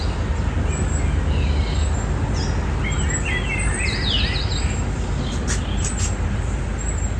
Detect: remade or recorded recorded